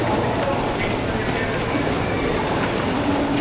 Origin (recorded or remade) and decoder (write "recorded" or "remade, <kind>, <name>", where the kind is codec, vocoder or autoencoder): recorded